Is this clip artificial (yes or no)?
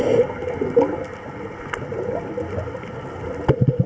no